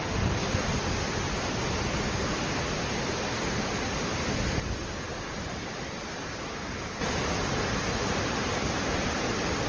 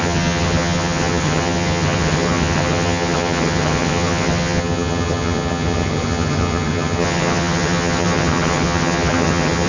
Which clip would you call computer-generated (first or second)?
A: second